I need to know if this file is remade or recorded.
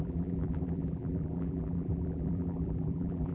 remade